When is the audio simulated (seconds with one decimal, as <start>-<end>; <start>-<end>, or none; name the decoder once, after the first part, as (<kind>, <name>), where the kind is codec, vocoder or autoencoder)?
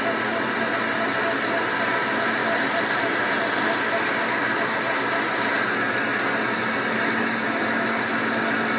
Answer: 2.4-3.8 (vocoder, BigVGAN v2)